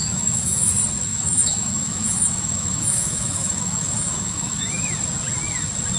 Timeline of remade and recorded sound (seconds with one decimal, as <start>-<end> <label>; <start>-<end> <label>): 0.0-0.7 remade; 0.7-1.1 recorded; 1.1-4.7 remade; 4.7-6.0 recorded